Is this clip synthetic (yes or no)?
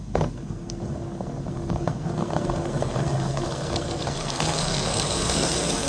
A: yes